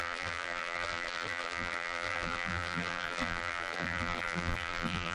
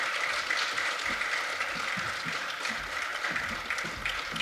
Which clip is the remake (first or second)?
first